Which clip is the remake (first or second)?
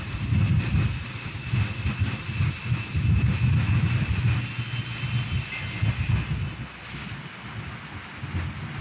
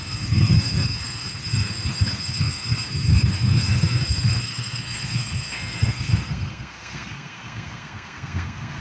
second